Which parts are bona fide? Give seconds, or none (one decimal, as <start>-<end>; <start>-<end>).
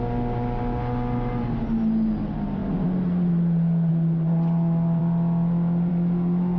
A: 0.0-6.6